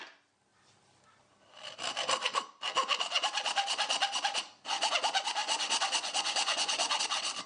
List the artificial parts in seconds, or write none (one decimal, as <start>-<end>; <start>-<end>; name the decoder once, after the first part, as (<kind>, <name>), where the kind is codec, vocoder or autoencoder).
5.4-7.0 (vocoder, Vocos)